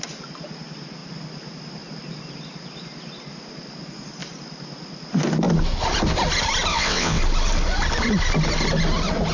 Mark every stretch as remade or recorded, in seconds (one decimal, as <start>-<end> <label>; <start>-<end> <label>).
0.0-6.7 recorded; 6.7-7.2 remade; 7.2-9.3 recorded